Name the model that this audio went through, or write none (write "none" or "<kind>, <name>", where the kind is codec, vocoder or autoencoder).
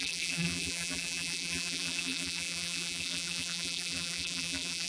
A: vocoder, BigVGAN v2